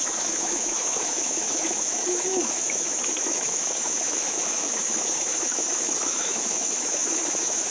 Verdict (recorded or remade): remade